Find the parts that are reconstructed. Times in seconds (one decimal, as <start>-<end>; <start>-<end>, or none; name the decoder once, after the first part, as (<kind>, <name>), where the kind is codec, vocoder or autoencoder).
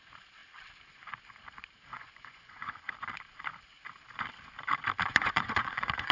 1.9-2.8 (vocoder, Vocos); 5.1-6.1